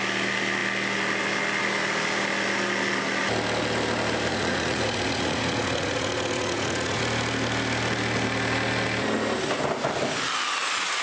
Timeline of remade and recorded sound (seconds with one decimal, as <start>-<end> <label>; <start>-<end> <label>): 0.0-4.3 recorded; 4.3-7.0 remade; 7.0-11.0 recorded